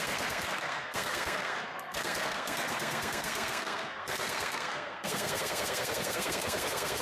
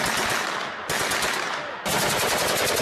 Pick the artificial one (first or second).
first